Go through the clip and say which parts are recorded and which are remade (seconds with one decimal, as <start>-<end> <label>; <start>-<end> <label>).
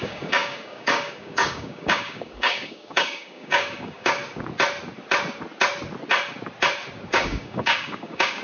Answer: 0.0-4.2 remade; 4.2-7.1 recorded; 7.1-8.4 remade